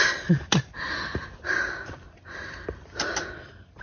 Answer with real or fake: real